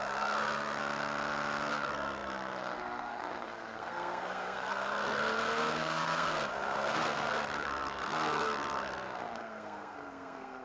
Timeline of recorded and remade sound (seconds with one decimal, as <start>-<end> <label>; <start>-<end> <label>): 0.0-0.8 remade; 0.8-1.7 recorded; 1.7-10.6 remade